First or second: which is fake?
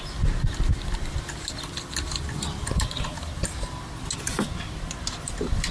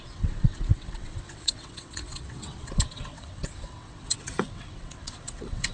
second